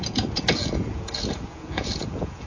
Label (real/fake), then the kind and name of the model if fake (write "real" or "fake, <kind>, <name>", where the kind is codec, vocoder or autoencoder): fake, vocoder, Vocos